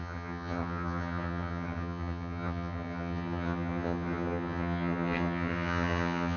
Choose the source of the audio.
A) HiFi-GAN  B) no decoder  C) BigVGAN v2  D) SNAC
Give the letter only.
A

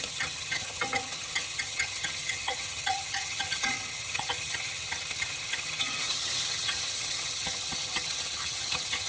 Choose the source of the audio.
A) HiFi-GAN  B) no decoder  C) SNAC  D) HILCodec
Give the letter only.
A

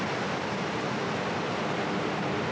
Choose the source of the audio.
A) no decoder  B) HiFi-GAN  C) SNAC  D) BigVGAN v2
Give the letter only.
A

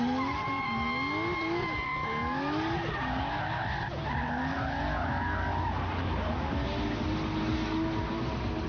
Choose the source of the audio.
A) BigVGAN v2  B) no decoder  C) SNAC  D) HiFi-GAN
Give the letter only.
B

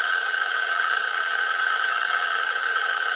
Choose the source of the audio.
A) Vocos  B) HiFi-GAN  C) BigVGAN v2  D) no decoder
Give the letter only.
B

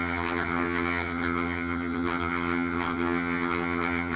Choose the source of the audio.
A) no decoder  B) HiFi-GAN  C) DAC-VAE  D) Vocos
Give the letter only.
B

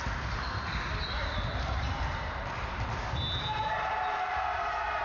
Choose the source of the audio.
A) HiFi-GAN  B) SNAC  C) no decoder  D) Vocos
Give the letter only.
C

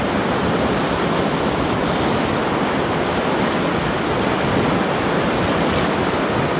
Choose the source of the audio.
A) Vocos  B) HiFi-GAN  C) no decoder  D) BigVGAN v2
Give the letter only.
C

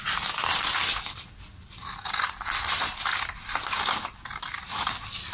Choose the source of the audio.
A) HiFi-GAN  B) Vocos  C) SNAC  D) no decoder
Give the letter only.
D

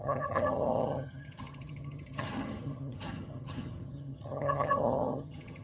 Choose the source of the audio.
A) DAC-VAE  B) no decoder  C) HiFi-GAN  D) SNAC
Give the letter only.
C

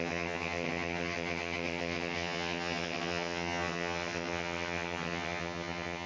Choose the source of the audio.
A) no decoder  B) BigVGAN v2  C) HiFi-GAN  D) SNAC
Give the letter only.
C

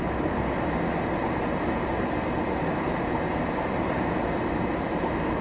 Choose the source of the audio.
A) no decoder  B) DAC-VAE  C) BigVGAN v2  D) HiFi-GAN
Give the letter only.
A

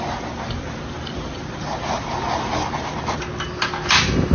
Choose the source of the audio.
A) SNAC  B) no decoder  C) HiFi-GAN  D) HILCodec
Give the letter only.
B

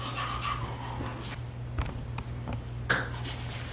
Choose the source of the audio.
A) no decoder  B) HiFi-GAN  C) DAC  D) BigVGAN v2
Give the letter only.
A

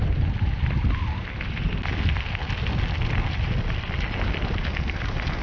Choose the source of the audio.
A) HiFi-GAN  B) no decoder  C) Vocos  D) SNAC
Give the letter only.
B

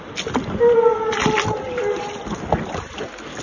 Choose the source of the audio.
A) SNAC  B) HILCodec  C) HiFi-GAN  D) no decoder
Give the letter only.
D